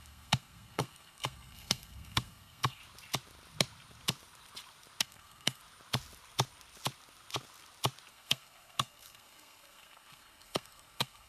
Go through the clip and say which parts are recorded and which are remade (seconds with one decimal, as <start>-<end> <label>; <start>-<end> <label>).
0.0-2.8 remade; 2.8-5.0 recorded; 5.0-5.6 remade; 5.6-8.1 recorded; 8.1-11.3 remade